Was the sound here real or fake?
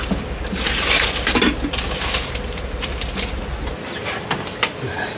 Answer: real